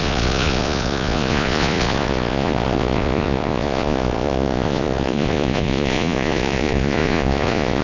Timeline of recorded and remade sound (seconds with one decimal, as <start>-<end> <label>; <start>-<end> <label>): 0.0-7.8 remade